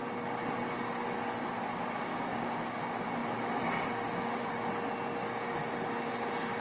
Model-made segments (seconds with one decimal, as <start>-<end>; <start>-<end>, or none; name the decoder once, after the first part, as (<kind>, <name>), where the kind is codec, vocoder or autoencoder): none